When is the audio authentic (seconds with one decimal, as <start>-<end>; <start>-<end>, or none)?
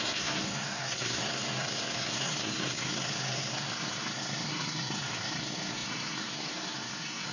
none